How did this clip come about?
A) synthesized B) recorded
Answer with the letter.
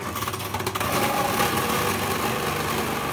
B